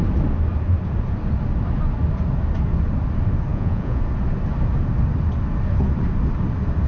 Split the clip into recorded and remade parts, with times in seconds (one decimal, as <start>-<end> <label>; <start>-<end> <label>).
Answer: 0.0-3.5 recorded; 3.5-4.0 remade; 4.0-6.9 recorded